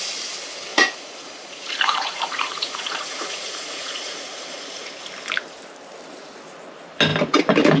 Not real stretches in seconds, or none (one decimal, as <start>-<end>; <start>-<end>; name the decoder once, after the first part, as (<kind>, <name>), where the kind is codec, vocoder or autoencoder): 0.7-4.9 (vocoder, Vocos)